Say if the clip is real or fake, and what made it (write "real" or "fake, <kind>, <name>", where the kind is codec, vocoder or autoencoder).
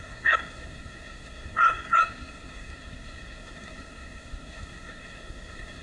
fake, codec, SNAC